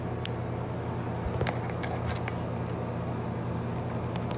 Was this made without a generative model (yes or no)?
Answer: yes